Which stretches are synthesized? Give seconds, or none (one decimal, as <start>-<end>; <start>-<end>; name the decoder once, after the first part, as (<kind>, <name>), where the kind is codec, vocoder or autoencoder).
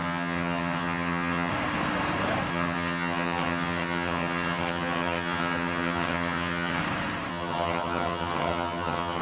0.0-1.5 (vocoder, HiFi-GAN); 2.5-6.8; 7.3-9.2